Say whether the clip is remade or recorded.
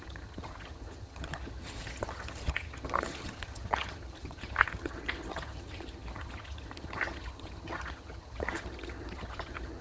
remade